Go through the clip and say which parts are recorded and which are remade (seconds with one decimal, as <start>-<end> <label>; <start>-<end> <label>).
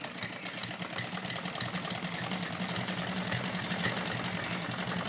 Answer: 0.0-5.1 recorded